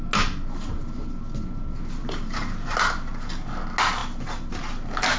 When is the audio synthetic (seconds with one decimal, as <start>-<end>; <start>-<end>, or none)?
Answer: none